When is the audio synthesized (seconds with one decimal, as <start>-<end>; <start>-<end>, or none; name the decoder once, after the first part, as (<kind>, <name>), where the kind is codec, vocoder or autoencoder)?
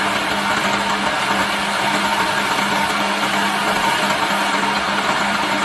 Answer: none